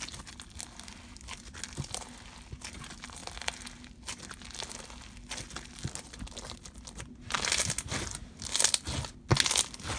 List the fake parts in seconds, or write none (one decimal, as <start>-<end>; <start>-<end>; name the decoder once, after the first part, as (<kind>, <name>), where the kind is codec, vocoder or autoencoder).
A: none